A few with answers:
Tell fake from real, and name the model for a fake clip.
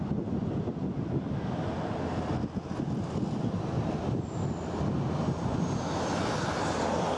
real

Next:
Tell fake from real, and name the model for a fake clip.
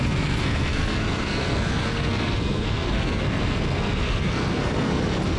fake, codec, SNAC